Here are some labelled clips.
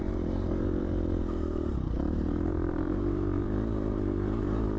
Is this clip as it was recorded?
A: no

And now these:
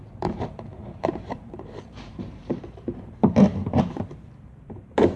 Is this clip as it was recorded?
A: no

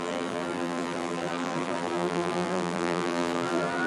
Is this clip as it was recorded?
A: no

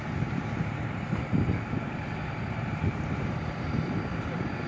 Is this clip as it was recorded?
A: no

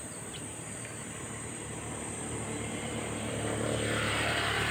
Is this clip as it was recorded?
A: no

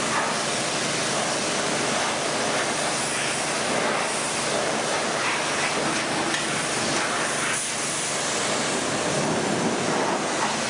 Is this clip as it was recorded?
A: yes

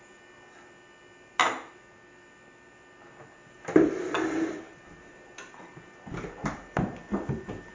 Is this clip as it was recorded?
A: yes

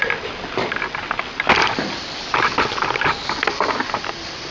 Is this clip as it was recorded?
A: yes